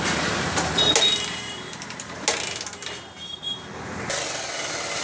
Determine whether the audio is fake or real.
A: real